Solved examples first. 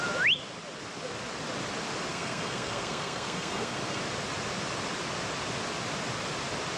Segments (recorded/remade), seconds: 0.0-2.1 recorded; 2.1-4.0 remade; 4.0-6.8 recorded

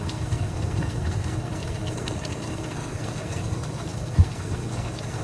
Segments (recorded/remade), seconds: 0.0-5.2 remade

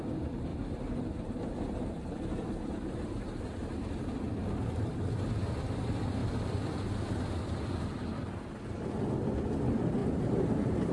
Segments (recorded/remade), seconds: 0.0-0.5 recorded; 0.5-3.9 remade; 3.9-10.0 recorded; 10.0-10.9 remade

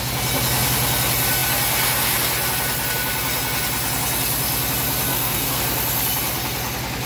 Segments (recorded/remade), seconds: 0.0-5.1 recorded; 5.1-5.6 remade; 5.6-7.1 recorded

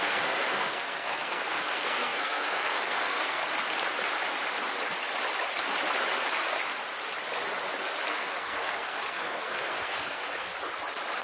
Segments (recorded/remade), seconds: 0.0-3.4 remade; 3.4-8.1 recorded; 8.1-10.5 remade; 10.5-11.2 recorded